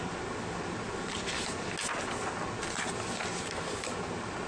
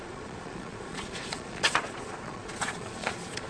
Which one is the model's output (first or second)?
second